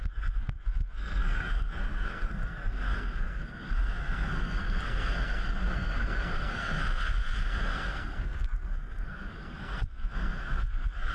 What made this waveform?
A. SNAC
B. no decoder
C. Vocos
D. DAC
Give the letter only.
A